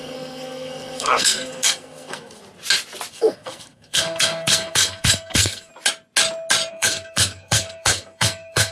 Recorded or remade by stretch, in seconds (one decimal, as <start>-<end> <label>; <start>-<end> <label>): 0.0-2.4 remade; 2.4-3.1 recorded; 3.1-5.7 remade; 5.7-6.7 recorded; 6.7-8.7 remade